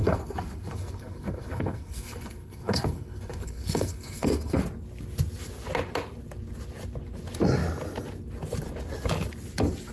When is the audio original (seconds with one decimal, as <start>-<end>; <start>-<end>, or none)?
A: 4.6-9.9

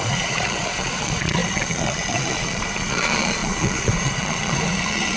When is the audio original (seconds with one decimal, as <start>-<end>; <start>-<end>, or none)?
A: none

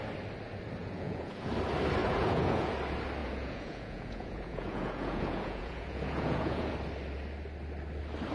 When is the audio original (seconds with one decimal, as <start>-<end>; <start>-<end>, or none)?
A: 0.0-0.8; 1.5-2.0; 2.7-3.2; 6.7-8.3

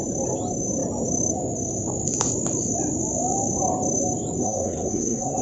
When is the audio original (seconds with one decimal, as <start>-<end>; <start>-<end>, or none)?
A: 0.0-4.4

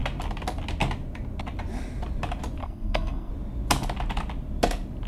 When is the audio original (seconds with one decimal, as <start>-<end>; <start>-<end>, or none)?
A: 0.0-2.6; 3.3-5.1

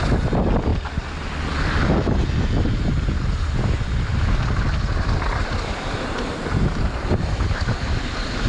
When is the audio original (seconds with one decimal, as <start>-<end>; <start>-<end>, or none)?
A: 0.0-8.5

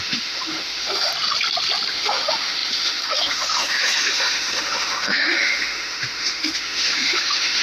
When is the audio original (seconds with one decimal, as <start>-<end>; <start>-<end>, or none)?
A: 1.1-1.9

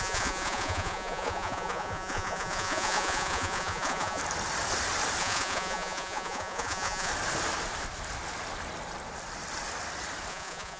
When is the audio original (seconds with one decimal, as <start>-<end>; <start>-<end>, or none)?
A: 4.2-5.2; 7.1-10.3